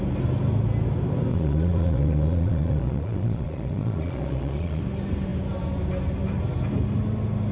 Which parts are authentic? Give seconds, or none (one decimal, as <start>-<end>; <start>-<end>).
0.0-1.3; 4.8-7.5

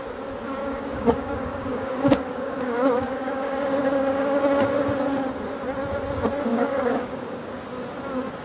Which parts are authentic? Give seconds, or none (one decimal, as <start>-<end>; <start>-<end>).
0.0-0.6; 4.4-6.5; 7.6-8.4

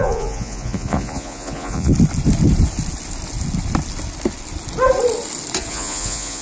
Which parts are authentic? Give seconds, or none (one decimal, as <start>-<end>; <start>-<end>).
1.9-5.7

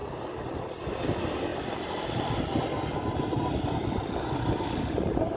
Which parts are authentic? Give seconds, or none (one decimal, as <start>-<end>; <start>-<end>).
0.8-1.5; 4.6-5.4

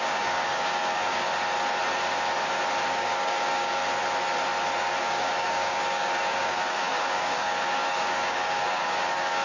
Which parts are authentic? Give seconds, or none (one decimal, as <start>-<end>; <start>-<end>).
1.3-2.9; 3.8-5.0

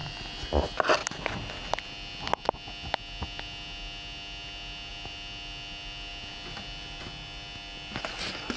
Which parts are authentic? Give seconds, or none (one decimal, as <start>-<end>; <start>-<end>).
0.0-8.6

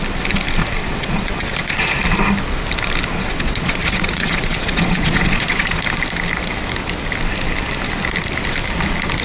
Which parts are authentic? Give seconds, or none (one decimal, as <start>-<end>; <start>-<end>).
0.0-0.8; 2.0-3.2; 5.8-9.2

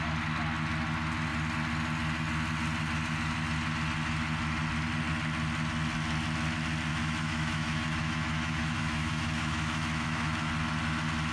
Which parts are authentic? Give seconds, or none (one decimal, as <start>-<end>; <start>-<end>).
0.0-6.9; 10.5-11.3